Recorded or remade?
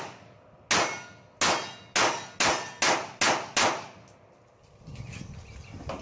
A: recorded